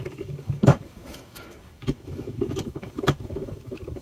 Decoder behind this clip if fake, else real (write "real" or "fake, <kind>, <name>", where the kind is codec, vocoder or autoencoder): fake, codec, DAC